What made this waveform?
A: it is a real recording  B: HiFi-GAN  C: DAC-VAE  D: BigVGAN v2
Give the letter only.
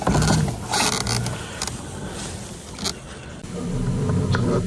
A